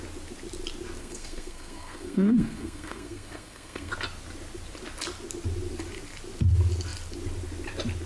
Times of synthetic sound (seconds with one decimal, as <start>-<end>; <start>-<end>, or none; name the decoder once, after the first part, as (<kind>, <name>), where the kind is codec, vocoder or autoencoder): 1.0-3.9 (codec, SNAC)